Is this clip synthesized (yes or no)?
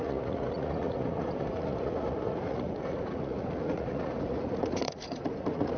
yes